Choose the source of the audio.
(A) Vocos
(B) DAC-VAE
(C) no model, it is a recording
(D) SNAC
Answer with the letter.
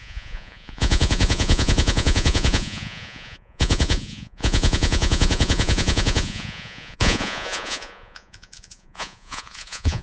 A